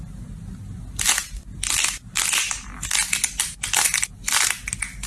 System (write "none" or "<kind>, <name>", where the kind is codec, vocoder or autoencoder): none